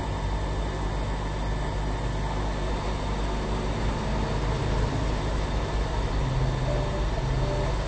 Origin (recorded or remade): recorded